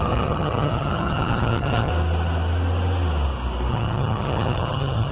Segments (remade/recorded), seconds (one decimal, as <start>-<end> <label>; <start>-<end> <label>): 0.0-1.9 remade; 1.9-3.7 recorded; 3.7-5.1 remade